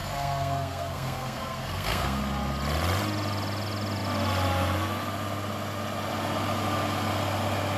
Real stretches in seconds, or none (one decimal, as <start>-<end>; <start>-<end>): 2.2-7.8